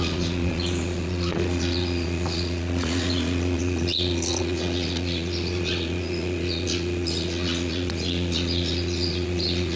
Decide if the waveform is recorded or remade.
remade